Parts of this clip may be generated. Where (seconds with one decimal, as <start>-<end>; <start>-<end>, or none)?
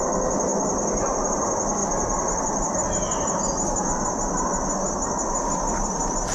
none